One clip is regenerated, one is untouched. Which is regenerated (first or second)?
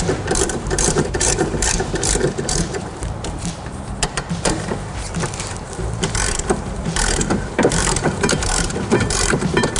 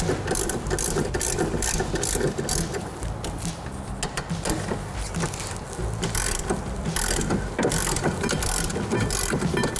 first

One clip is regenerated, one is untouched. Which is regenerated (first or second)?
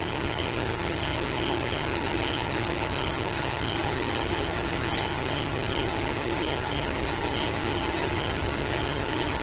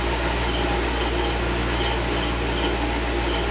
first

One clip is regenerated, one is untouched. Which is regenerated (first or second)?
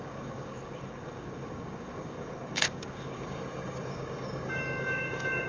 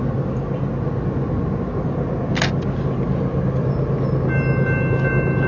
first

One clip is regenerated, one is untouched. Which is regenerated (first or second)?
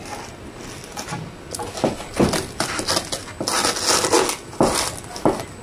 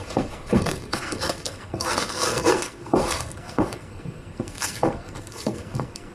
second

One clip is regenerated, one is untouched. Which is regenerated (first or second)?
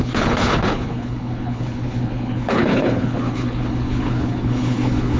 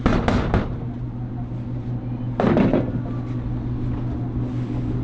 first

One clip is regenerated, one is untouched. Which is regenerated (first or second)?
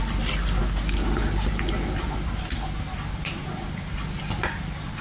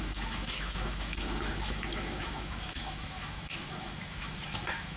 second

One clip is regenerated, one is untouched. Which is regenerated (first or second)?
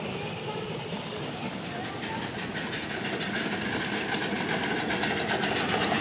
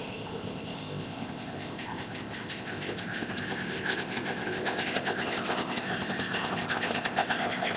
second